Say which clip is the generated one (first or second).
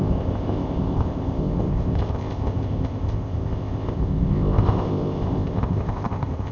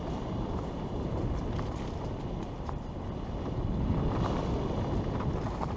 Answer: first